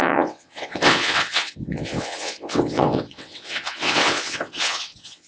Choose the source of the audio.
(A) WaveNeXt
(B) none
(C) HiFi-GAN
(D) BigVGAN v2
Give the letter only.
A